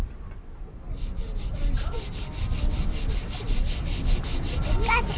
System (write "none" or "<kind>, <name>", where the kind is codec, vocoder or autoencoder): none